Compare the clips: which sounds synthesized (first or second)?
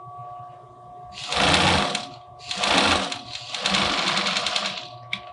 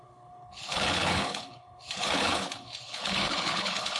second